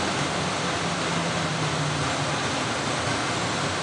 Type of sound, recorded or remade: remade